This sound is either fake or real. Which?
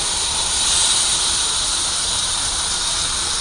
fake